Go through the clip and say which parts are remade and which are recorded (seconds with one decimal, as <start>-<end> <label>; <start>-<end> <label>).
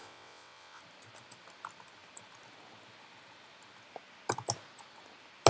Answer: 0.0-0.8 remade; 0.8-5.5 recorded